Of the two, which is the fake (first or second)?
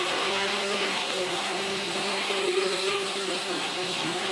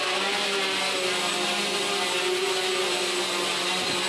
first